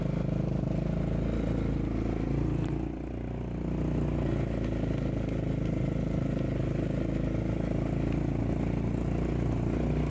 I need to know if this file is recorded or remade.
recorded